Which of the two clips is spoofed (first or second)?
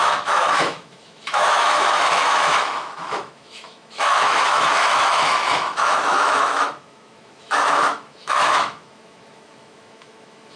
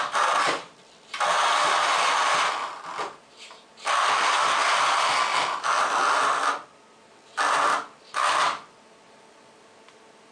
first